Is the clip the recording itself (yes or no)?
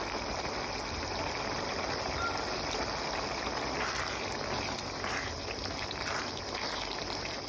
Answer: yes